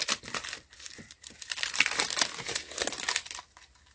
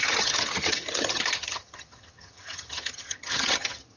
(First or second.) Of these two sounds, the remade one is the second